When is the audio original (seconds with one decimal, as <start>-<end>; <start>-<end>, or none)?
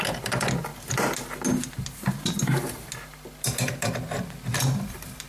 0.0-5.3